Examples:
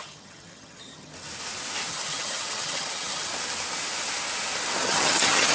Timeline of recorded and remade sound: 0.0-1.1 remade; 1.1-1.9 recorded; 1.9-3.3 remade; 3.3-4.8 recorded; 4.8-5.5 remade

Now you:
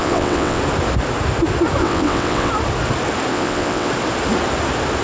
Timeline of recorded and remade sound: 0.0-0.6 remade; 0.6-1.8 recorded; 1.8-2.5 remade; 2.5-3.3 recorded; 3.3-3.9 remade; 3.9-5.0 recorded

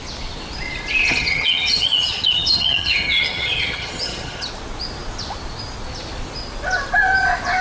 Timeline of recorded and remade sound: 0.0-1.0 recorded; 1.0-4.5 remade; 4.5-7.6 recorded